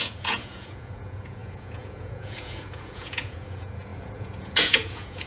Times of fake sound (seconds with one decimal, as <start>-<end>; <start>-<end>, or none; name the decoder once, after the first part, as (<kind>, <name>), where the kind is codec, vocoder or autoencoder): 0.0-5.3 (vocoder, Vocos)